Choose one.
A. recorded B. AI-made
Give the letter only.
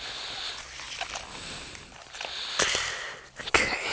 A